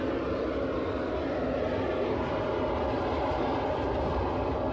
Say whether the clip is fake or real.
real